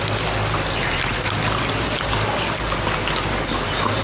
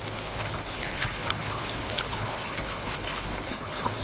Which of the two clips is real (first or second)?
first